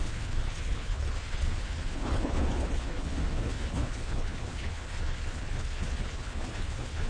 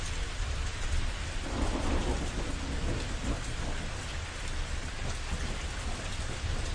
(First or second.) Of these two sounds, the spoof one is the first